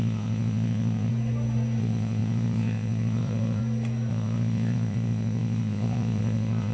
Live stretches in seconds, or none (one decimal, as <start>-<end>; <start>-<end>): 1.1-1.8; 3.6-4.1

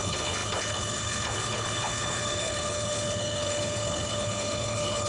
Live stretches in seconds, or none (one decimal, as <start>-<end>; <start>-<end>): none

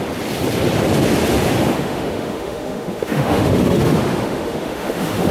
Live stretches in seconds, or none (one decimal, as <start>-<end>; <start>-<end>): 0.0-1.8

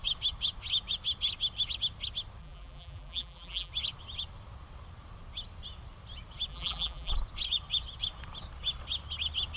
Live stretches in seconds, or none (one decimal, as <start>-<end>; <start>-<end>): 0.0-2.4; 3.7-6.5; 7.1-9.6

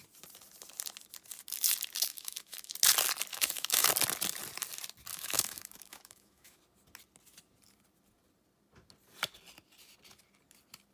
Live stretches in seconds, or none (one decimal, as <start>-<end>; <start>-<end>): 0.0-2.1; 2.7-3.3; 3.9-5.1; 6.6-10.9

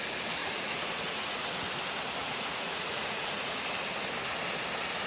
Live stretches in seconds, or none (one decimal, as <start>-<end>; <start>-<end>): 0.0-0.4; 1.4-2.2; 3.6-5.1